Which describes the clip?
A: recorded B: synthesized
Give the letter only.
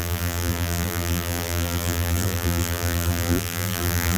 B